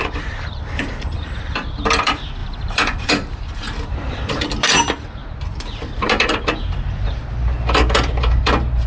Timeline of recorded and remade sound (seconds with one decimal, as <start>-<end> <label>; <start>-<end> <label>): 0.0-8.9 remade

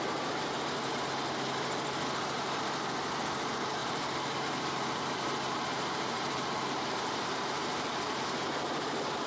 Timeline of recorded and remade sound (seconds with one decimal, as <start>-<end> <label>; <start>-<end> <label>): 0.0-3.8 recorded; 3.8-8.1 remade; 8.1-9.3 recorded

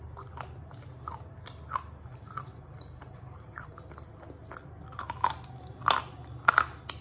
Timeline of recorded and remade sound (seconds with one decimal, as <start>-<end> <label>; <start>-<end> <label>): 0.0-2.1 recorded; 2.1-3.9 remade; 3.9-7.0 recorded